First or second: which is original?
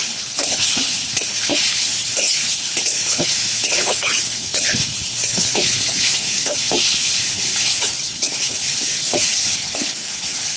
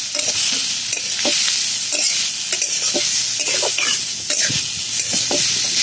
second